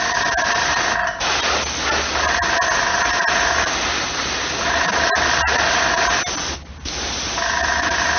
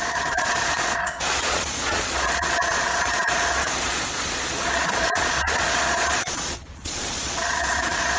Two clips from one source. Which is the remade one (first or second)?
second